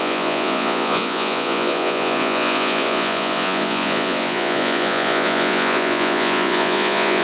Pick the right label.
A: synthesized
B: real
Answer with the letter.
A